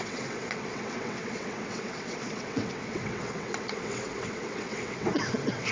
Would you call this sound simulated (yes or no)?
yes